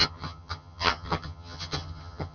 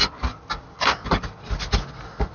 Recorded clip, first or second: second